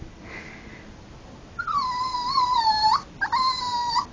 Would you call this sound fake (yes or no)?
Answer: no